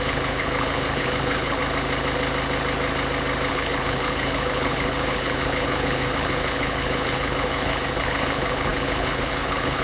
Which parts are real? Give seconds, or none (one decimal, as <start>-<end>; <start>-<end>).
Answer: 1.6-3.5